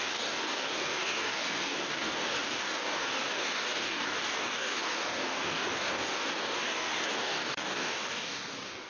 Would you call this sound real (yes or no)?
no